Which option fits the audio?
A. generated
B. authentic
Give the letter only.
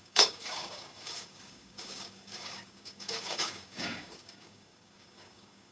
A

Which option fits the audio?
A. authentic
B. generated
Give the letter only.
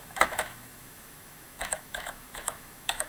B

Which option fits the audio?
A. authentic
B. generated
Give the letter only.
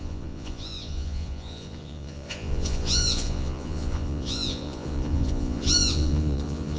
B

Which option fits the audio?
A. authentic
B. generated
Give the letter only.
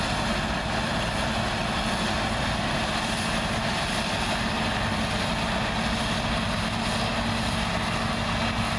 A